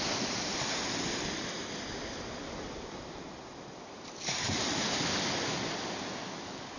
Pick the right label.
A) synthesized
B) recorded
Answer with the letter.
B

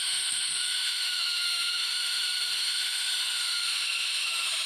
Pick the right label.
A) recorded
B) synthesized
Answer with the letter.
B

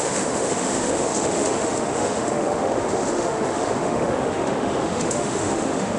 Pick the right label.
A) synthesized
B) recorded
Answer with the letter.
A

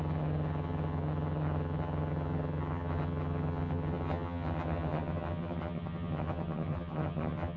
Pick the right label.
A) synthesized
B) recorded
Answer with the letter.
A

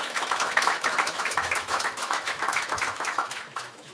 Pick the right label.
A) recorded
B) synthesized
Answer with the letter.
B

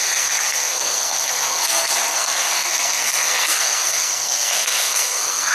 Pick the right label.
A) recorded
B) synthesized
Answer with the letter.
B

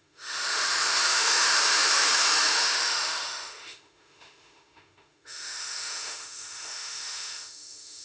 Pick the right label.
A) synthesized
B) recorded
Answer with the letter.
A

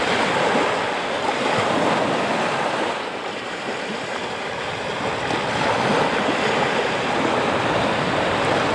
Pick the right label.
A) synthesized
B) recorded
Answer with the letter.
B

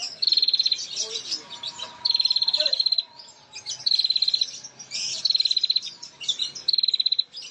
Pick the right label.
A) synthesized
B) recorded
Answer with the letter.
B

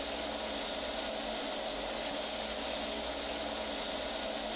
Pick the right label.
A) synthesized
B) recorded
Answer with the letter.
B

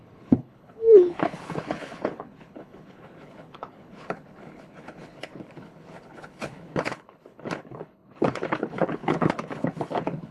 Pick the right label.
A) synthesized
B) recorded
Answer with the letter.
A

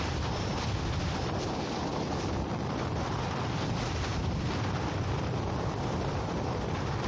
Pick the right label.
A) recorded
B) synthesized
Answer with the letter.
B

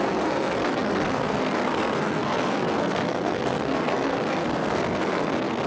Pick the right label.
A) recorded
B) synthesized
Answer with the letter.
B